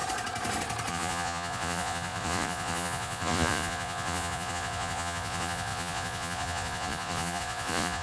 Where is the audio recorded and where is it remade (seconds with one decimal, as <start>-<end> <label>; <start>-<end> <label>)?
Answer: 0.0-0.9 recorded; 0.9-8.0 remade